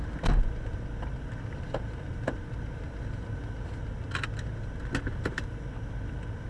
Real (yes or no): yes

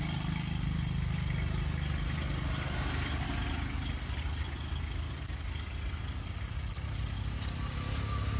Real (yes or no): yes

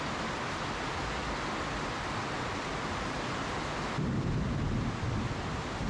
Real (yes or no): yes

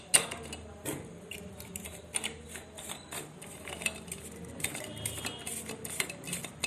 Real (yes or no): yes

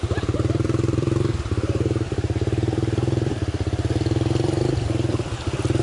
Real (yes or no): no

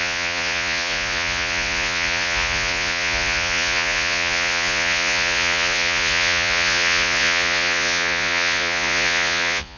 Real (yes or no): no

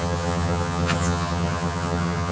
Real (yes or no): no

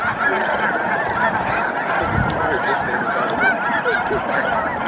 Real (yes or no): yes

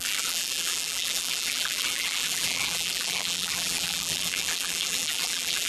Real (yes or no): no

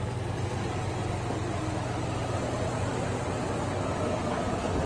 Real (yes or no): yes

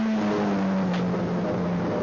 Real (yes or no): yes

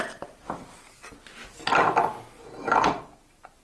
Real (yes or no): yes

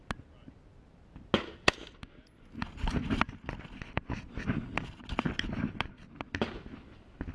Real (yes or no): yes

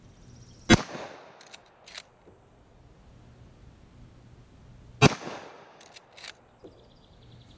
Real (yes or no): yes